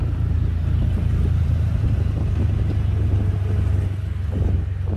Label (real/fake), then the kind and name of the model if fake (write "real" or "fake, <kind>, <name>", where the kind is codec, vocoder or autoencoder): real